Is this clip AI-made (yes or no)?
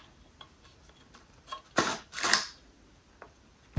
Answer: yes